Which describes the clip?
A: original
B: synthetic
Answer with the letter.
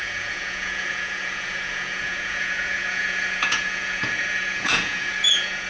B